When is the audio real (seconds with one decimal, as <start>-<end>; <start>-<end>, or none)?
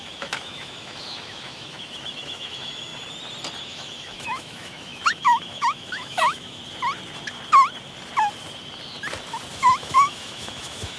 2.9-3.6; 6.6-9.5